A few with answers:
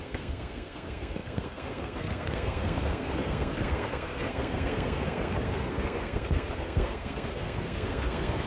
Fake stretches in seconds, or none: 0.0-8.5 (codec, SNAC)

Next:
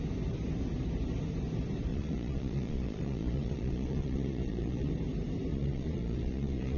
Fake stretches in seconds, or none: 1.9-4.9 (vocoder, Vocos); 5.5-6.8

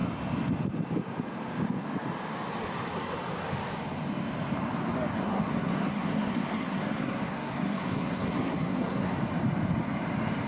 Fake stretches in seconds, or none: 5.2-9.2 (codec, SNAC)

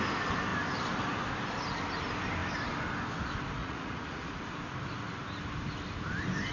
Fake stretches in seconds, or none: 3.6-4.3 (vocoder, Vocos)

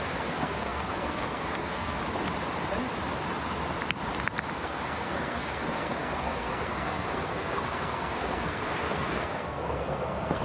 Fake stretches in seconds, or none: 0.0-2.0 (codec, SNAC); 4.5-10.4

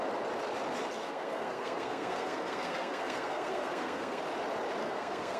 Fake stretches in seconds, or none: 1.0-4.2 (codec, SNAC); 4.8-5.4

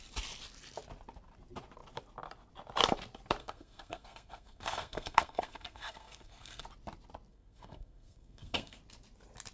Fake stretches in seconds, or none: 3.4-6.6 (codec, SNAC); 7.3-8.8